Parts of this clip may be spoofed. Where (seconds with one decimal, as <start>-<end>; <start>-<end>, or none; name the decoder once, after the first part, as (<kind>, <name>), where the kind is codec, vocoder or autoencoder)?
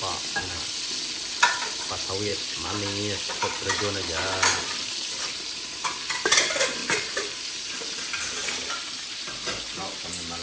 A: 6.8-8.0 (vocoder, BigVGAN v2)